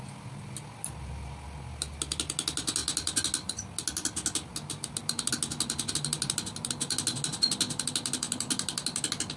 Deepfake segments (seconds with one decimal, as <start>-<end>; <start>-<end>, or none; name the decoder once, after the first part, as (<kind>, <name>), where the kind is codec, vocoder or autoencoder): none